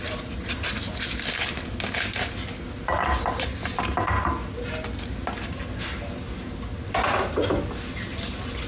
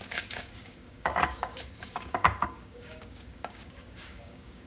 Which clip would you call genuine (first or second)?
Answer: first